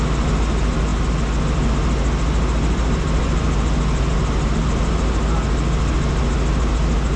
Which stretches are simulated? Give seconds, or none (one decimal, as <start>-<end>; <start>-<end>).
none